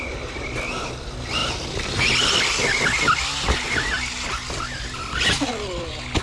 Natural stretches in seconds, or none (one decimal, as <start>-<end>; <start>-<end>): 0.0-6.2